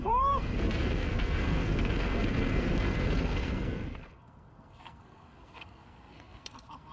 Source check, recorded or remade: remade